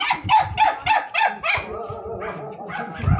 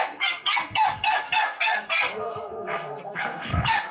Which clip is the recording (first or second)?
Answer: first